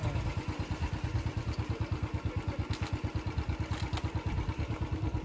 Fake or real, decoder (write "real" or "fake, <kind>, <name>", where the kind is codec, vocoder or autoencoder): real